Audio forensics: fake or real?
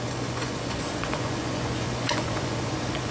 fake